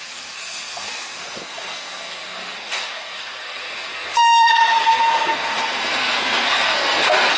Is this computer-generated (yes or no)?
yes